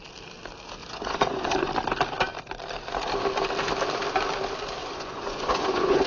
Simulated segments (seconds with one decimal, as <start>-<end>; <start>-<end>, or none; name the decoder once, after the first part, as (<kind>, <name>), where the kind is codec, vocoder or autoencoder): 0.8-1.7 (vocoder, Vocos); 4.8-6.1